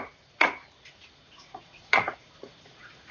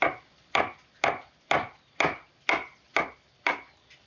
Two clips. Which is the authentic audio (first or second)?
second